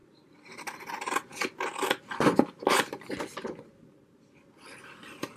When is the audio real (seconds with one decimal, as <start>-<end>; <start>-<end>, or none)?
0.0-5.4